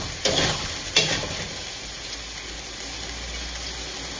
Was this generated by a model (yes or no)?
no